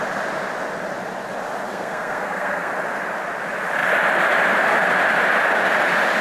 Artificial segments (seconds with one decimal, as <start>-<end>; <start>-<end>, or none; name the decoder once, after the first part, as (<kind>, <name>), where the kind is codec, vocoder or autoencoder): 1.7-2.7 (codec, SNAC)